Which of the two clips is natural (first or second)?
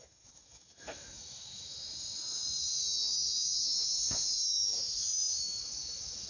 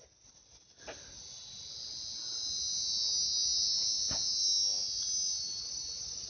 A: second